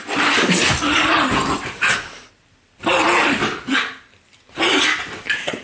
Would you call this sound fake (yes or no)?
no